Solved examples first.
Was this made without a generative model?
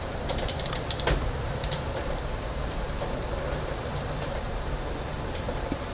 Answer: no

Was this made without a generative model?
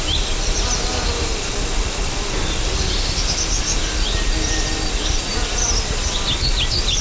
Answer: yes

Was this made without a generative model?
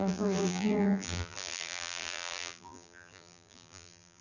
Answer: no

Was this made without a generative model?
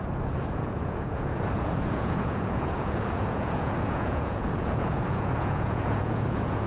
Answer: no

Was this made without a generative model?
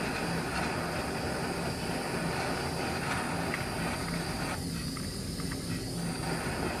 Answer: yes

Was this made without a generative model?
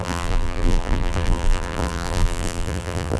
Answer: no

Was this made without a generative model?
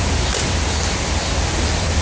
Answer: no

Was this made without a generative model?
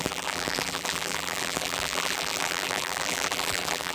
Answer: no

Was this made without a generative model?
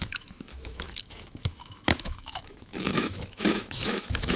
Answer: no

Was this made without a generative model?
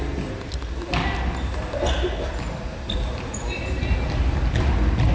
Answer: yes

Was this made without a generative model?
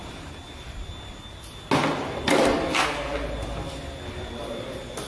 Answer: yes